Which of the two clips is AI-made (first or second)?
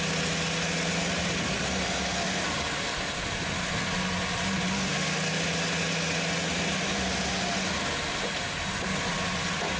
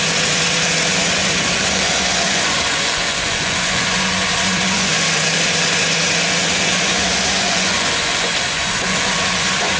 second